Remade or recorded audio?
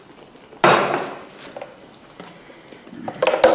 recorded